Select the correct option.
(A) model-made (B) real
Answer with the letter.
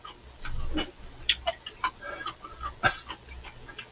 B